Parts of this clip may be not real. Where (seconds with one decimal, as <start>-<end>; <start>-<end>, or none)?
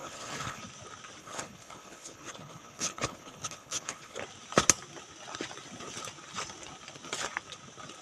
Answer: 0.0-0.6; 1.2-4.2